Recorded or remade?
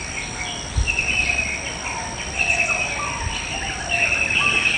recorded